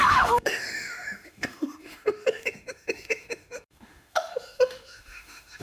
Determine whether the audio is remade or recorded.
remade